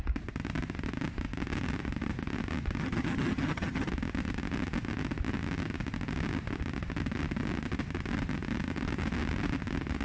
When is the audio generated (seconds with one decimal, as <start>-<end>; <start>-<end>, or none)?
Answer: 2.8-3.9